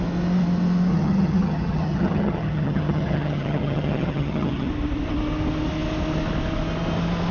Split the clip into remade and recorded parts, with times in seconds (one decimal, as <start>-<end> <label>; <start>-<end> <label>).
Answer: 0.0-0.9 recorded; 0.9-4.7 remade; 4.7-7.3 recorded